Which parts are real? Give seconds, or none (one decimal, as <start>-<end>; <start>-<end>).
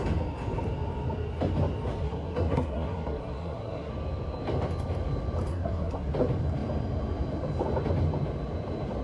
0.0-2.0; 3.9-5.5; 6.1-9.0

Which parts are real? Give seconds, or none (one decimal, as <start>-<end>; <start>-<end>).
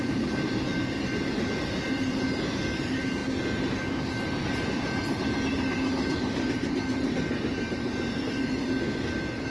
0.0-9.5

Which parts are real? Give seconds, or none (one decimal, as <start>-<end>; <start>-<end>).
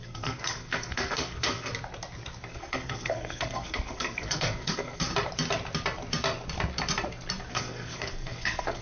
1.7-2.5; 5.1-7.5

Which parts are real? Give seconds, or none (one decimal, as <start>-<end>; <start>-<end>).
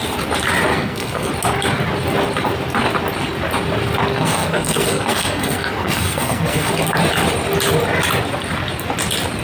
0.0-0.7; 1.3-4.1; 6.7-9.4